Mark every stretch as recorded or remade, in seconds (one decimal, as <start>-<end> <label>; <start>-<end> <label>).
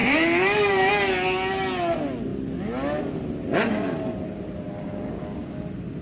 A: 0.0-0.9 remade; 0.9-6.0 recorded